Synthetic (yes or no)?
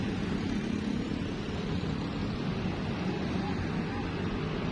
yes